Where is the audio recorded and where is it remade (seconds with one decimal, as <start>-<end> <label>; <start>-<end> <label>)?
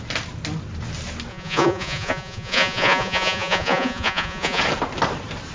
0.0-1.3 recorded; 1.3-4.6 remade; 4.6-5.5 recorded